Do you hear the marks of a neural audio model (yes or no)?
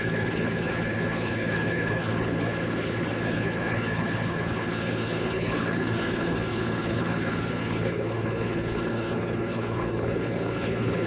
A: yes